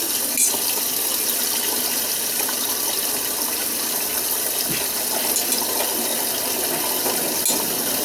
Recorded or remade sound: recorded